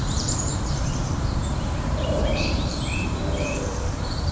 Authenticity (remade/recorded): remade